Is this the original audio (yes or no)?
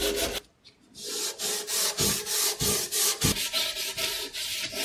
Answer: yes